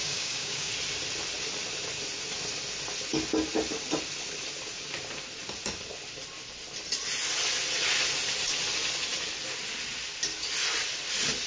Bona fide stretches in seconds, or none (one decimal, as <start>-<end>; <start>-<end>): 0.7-11.5